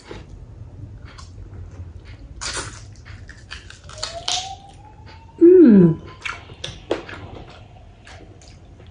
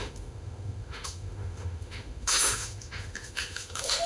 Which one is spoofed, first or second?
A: second